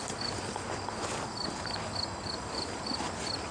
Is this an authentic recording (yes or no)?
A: yes